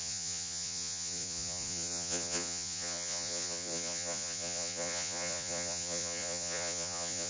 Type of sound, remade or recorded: remade